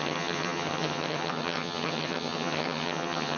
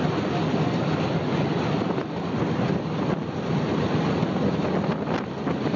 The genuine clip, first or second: second